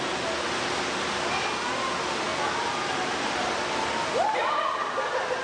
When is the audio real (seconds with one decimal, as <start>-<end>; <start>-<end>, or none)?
0.0-5.4